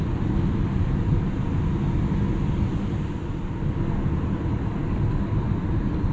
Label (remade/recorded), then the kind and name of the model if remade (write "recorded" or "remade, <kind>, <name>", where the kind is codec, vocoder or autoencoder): recorded